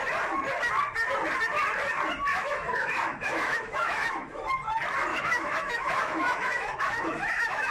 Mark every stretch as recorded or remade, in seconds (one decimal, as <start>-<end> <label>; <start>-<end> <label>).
0.0-2.3 recorded; 2.3-4.4 remade; 4.4-5.1 recorded; 5.1-7.7 remade